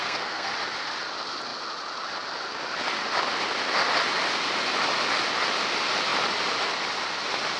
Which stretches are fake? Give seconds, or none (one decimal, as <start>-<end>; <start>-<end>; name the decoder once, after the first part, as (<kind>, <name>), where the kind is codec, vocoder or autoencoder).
0.0-0.5 (codec, SNAC)